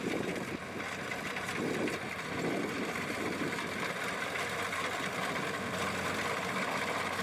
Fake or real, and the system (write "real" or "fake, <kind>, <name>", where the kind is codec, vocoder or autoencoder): real